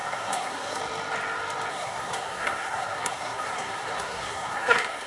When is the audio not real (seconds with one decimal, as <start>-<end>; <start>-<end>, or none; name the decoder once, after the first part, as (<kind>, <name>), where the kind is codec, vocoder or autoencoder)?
0.0-0.8 (codec, SNAC); 1.7-5.1